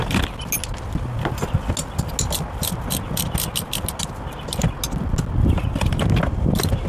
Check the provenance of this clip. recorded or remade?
recorded